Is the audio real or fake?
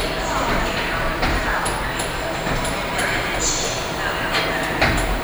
fake